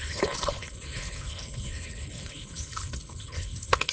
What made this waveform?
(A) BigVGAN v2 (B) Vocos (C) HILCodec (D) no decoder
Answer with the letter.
C